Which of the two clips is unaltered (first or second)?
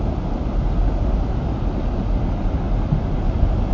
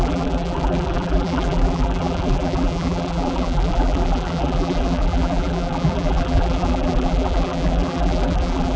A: first